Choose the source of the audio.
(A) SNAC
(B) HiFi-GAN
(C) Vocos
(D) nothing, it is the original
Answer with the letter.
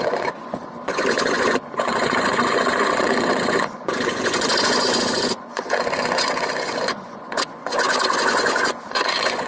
C